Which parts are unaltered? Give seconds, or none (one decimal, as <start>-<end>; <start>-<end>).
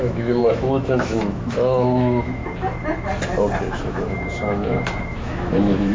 2.4-3.7